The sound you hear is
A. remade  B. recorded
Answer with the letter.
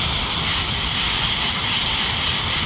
B